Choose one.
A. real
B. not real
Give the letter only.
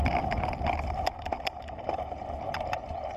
B